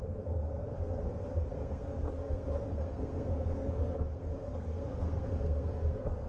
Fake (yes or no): yes